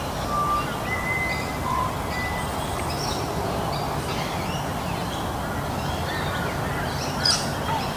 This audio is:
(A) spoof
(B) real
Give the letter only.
B